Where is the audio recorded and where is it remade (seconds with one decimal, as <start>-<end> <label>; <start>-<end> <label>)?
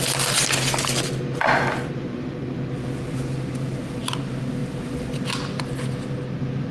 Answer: 0.0-6.7 recorded